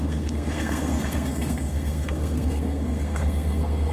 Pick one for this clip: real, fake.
fake